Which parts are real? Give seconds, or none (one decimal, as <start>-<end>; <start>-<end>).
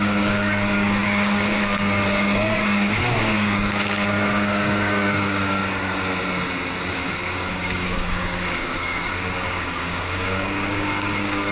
5.6-6.9